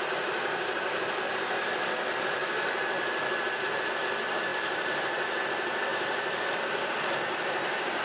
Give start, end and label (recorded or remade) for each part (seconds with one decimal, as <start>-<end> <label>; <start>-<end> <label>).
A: 0.0-2.4 recorded; 2.4-3.4 remade; 3.4-4.5 recorded; 4.5-5.4 remade; 5.4-5.9 recorded; 5.9-6.9 remade; 6.9-8.0 recorded

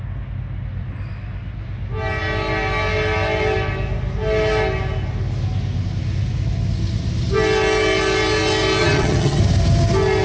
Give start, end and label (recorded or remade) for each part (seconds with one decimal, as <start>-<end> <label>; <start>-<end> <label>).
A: 0.0-8.8 recorded; 8.8-9.4 remade; 9.4-10.2 recorded

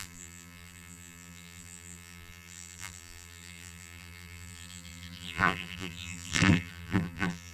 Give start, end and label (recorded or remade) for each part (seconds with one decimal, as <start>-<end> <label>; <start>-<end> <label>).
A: 0.0-7.5 remade

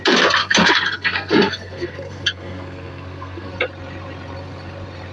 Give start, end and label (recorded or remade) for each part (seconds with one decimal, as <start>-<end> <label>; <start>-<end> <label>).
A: 0.0-0.4 recorded; 0.4-3.5 remade; 3.5-5.1 recorded

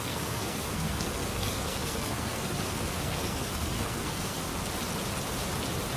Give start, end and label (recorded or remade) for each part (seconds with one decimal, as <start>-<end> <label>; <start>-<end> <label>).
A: 0.0-4.5 remade; 4.5-6.0 recorded

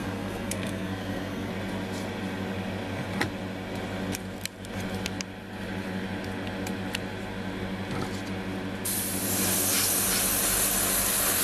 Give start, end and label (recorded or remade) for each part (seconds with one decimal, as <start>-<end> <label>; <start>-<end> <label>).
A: 0.0-1.5 remade; 1.5-11.4 recorded